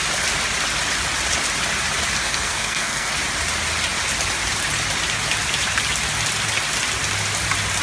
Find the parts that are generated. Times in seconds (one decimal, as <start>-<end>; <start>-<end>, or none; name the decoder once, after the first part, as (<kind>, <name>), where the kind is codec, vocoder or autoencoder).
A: 2.2-3.1 (codec, SNAC)